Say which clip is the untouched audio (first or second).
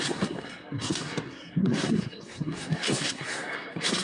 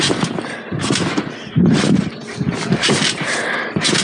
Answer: second